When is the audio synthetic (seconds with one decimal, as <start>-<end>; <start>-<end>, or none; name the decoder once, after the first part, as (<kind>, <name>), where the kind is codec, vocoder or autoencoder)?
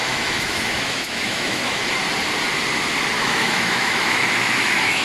0.0-1.8 (autoencoder, DAC-VAE); 3.2-5.0